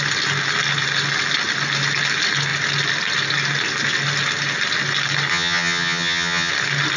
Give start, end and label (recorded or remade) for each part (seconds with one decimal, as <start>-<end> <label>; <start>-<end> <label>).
0.0-5.3 recorded; 5.3-6.5 remade; 6.5-7.0 recorded